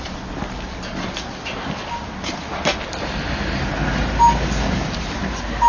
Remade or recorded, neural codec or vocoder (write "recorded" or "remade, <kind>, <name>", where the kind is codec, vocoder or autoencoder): recorded